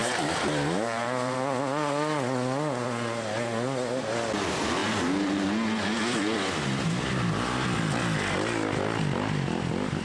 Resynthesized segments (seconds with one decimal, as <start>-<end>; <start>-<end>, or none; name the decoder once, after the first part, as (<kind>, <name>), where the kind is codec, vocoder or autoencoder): 0.0-1.6 (vocoder, BigVGAN v2)